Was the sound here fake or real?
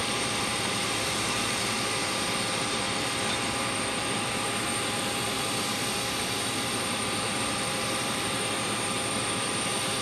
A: fake